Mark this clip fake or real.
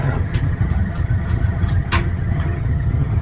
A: fake